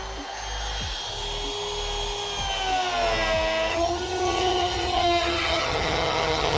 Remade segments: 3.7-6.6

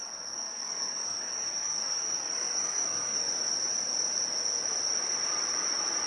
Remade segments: 0.0-3.3